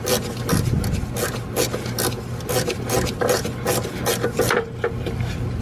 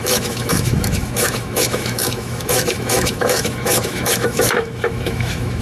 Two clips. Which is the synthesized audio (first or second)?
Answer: second